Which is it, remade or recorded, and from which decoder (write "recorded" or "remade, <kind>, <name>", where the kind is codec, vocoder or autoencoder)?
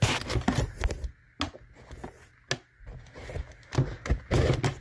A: recorded